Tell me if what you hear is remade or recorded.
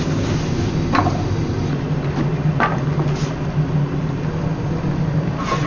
recorded